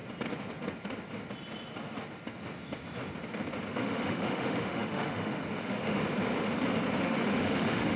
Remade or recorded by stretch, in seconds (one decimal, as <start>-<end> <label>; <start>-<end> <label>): 0.0-3.7 recorded; 3.7-6.0 remade; 6.0-7.0 recorded; 7.0-8.0 remade

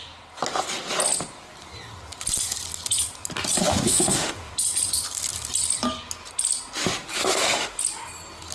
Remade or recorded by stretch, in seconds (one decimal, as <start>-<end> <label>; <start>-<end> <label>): 0.0-3.7 recorded; 3.7-4.5 remade; 4.5-7.2 recorded; 7.2-7.8 remade; 7.8-8.5 recorded

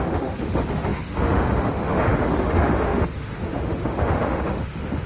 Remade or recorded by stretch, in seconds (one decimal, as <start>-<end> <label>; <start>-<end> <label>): 0.0-5.1 remade

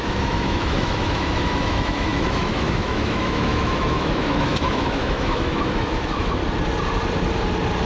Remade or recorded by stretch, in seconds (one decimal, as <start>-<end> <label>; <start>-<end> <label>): 0.0-6.4 remade; 6.4-7.9 recorded

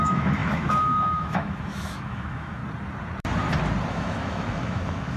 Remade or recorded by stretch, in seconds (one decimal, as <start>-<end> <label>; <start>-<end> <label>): 0.0-2.6 remade; 2.6-3.9 recorded; 3.9-5.2 remade

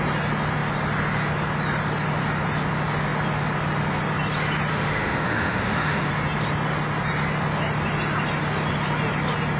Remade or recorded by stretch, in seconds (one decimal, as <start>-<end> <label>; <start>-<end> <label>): 0.0-4.7 recorded; 4.7-6.1 remade; 6.1-9.6 recorded

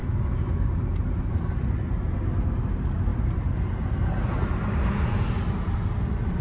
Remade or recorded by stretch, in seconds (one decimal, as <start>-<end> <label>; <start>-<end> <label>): 0.0-6.4 recorded